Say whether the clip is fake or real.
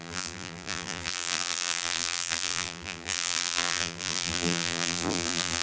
fake